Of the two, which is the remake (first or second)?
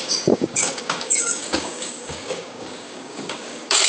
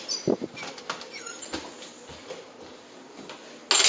first